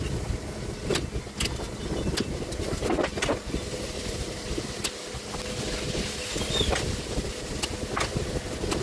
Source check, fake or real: real